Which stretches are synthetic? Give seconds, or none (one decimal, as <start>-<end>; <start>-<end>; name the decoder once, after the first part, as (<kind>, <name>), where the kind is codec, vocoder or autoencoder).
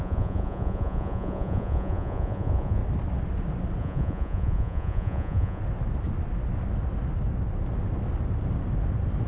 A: 0.0-2.8 (vocoder, Vocos); 3.8-5.6